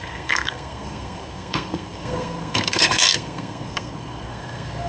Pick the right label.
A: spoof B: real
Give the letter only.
A